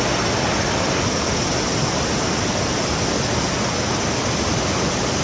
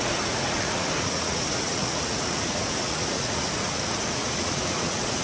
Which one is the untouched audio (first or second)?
first